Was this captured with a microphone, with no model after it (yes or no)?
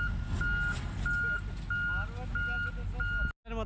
yes